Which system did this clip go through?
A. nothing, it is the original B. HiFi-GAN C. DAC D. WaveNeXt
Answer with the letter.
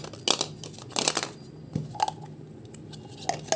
A